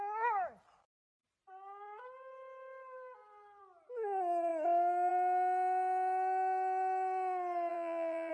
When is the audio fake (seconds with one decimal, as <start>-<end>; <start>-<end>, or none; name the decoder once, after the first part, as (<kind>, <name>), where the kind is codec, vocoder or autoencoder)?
7.7-8.3 (vocoder, BigVGAN v2)